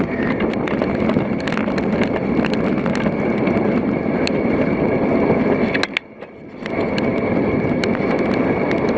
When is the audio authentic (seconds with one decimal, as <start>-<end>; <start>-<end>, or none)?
0.0-9.0